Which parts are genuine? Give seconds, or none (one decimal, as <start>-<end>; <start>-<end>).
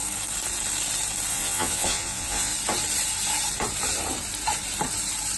0.0-1.3; 2.5-5.4